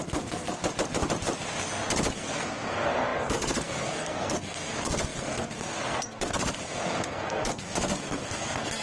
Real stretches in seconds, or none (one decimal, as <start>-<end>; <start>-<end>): 0.6-2.1